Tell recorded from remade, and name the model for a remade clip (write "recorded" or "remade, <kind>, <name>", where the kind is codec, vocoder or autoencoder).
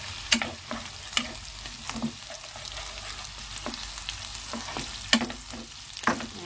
recorded